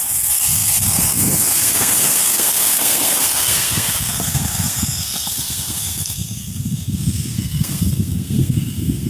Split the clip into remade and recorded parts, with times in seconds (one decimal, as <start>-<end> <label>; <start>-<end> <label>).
0.0-9.1 remade